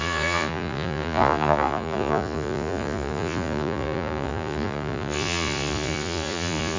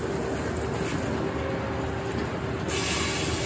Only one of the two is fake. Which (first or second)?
first